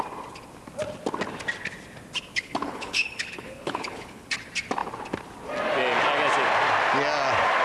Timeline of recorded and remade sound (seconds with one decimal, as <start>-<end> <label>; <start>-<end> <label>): 0.0-2.3 recorded; 2.3-4.3 remade; 4.3-7.6 recorded